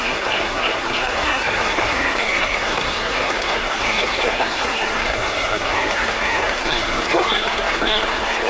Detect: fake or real fake